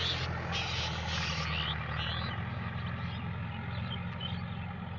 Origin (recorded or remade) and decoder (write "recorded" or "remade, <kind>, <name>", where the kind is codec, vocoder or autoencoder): recorded